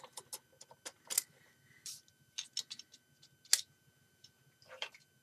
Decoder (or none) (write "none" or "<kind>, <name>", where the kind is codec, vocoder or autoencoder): none